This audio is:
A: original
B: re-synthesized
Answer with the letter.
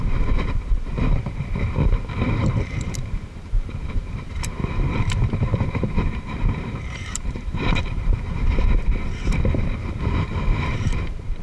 B